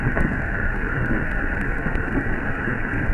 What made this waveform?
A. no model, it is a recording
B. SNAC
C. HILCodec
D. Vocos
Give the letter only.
B